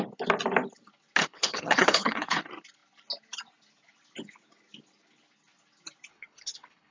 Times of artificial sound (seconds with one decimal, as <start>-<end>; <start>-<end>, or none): 1.2-2.4; 6.1-6.9